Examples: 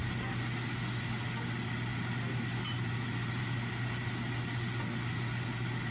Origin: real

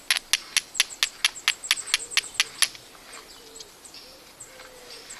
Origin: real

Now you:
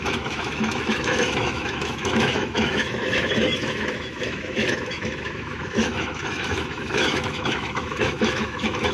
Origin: fake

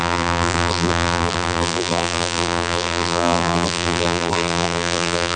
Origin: fake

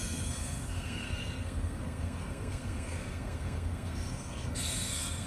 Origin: fake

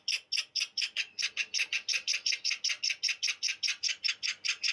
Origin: real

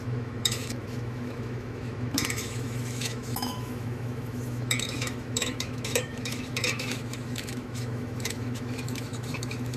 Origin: fake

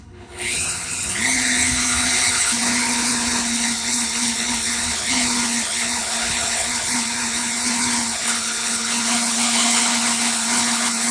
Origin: fake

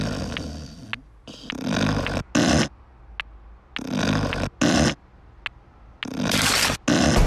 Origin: real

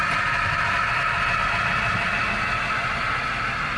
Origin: real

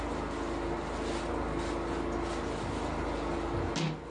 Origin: real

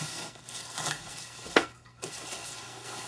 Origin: fake